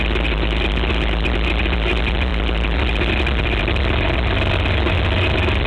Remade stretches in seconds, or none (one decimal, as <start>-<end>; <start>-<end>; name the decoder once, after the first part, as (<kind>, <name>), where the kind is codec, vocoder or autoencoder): none